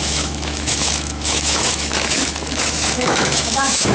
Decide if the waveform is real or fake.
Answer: fake